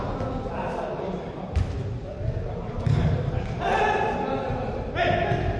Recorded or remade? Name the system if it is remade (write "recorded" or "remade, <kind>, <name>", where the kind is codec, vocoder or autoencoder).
recorded